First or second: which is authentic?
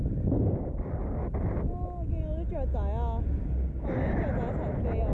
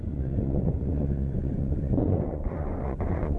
first